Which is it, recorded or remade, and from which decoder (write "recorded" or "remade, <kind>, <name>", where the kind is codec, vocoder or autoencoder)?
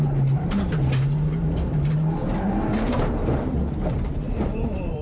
remade, vocoder, BigVGAN v2